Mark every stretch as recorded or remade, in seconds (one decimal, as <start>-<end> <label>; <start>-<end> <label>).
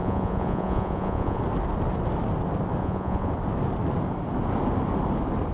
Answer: 0.0-1.4 remade; 1.4-2.8 recorded; 2.8-3.3 remade; 3.3-5.5 recorded